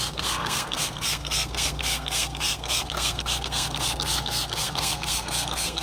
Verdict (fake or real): fake